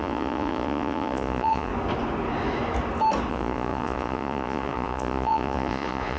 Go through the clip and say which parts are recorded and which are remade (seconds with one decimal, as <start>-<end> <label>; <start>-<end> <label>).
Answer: 0.0-1.7 remade; 1.7-3.3 recorded; 3.3-6.2 remade